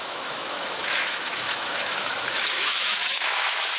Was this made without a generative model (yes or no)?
no